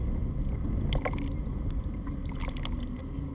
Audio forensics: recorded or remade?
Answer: recorded